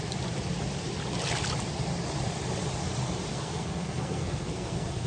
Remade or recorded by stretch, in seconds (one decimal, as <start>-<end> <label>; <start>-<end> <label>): 0.0-3.3 recorded; 3.3-5.1 remade